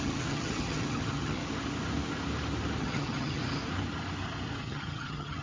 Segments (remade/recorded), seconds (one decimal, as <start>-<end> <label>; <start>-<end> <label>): 0.0-1.4 remade; 1.4-2.8 recorded; 2.8-3.4 remade; 3.4-4.6 recorded; 4.6-5.4 remade